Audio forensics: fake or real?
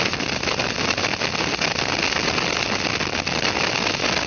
real